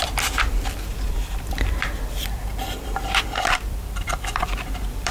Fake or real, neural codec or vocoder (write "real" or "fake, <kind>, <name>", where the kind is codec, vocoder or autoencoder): fake, vocoder, BigVGAN v2